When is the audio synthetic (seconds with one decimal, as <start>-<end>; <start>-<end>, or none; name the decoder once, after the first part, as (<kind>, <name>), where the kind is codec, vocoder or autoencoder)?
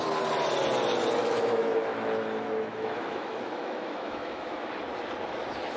1.2-4.7 (autoencoder, DAC-VAE)